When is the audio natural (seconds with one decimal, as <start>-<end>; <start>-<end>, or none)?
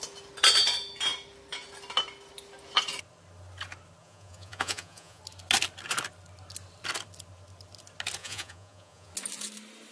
0.0-4.0; 5.2-8.2; 9.1-9.9